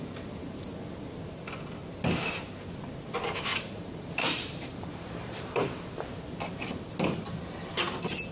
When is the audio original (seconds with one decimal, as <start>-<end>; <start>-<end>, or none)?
0.0-3.5; 6.3-8.3